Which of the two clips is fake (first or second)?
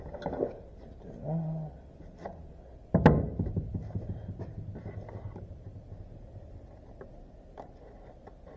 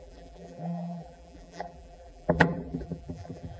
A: second